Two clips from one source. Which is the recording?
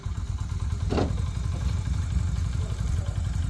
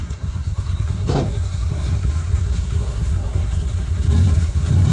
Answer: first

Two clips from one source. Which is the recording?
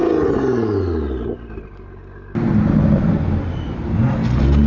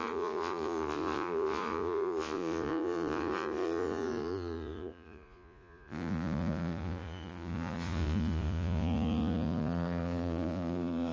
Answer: first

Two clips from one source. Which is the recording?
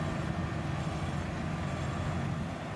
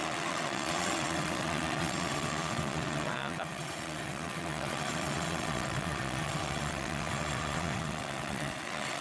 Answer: first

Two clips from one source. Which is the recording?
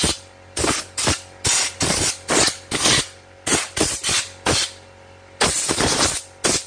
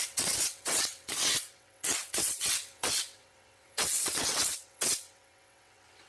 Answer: first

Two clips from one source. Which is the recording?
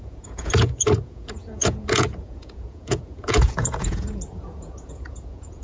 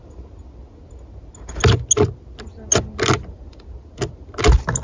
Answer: second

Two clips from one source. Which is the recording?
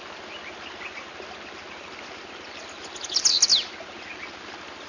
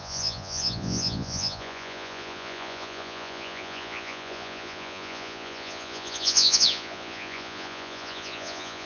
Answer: first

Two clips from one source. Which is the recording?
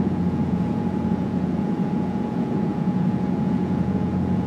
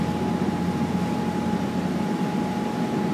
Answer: second